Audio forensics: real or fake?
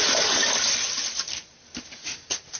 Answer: real